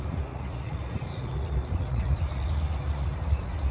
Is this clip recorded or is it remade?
remade